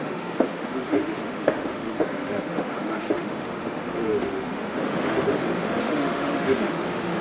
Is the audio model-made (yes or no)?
yes